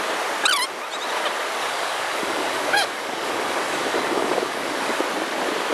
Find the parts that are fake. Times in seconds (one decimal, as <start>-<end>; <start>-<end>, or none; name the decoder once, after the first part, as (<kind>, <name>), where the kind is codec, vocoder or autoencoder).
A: 1.6-5.0 (codec, DAC)